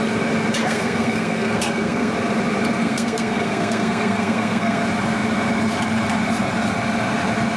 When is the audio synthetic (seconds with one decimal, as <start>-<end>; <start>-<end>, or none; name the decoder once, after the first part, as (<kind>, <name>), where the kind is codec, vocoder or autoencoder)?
0.6-2.1 (codec, SNAC); 2.8-4.8